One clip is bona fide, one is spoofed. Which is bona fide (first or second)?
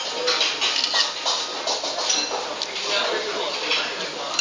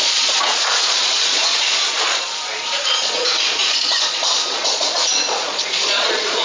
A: first